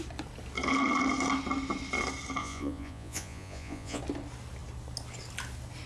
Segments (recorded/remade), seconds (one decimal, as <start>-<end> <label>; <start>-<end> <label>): 0.0-2.4 recorded; 2.4-4.0 remade; 4.0-5.9 recorded